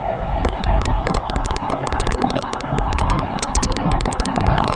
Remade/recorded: remade